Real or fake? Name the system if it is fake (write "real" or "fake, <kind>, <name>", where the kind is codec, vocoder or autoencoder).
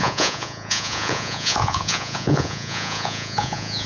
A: fake, vocoder, Vocos